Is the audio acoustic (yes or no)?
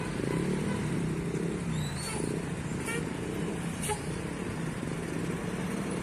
yes